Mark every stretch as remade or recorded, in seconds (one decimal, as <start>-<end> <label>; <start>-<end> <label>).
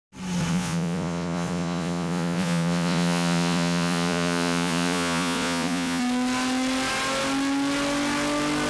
0.0-0.5 recorded; 0.5-6.0 remade; 6.0-8.7 recorded